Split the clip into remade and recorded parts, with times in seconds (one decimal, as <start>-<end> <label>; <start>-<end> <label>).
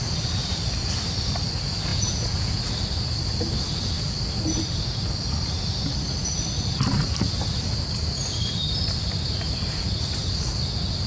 0.0-1.9 recorded; 1.9-2.6 remade; 2.6-11.1 recorded